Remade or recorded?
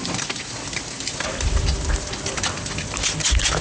recorded